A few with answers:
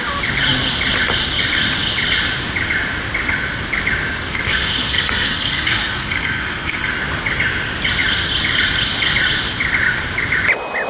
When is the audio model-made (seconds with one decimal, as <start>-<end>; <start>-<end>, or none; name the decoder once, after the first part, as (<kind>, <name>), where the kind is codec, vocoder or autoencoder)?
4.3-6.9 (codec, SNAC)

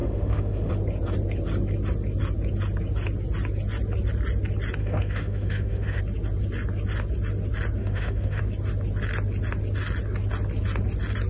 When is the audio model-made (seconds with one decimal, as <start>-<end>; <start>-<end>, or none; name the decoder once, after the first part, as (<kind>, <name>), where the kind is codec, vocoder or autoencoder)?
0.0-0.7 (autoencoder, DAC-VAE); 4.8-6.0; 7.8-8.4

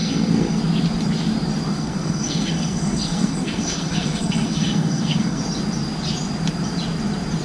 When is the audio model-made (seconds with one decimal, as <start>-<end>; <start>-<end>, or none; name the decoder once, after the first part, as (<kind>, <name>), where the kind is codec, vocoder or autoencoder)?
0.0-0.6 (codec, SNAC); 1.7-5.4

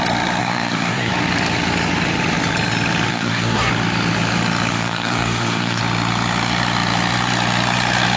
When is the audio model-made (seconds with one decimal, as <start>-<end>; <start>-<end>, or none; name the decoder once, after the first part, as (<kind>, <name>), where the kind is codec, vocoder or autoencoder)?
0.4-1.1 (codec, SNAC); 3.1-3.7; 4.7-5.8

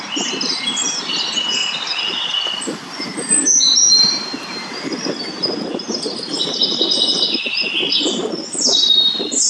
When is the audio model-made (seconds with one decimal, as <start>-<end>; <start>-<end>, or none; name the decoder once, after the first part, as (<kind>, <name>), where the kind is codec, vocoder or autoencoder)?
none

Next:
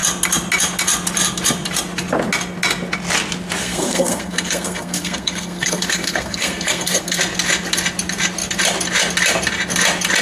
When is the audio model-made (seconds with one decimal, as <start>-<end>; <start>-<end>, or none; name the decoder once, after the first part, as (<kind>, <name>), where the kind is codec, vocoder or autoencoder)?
3.6-7.2 (codec, SNAC)

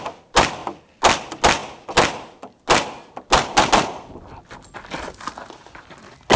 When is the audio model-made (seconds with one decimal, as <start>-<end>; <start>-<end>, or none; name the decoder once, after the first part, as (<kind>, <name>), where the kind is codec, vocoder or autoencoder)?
none

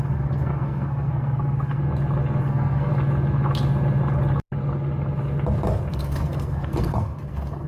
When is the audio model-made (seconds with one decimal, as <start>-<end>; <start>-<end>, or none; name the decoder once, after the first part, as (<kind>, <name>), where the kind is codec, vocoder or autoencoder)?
0.0-1.8 (codec, SNAC); 2.4-2.9; 5.9-7.7